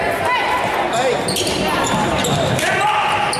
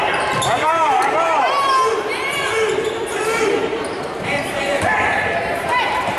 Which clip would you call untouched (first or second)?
first